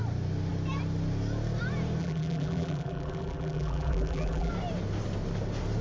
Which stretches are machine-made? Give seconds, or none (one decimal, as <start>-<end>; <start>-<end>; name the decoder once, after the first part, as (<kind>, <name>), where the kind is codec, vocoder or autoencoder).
2.0-4.5 (vocoder, BigVGAN v2)